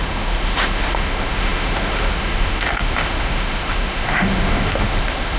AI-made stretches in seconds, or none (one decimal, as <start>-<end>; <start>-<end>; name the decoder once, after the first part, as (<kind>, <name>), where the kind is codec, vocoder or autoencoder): 0.0-5.4 (autoencoder, DAC-VAE)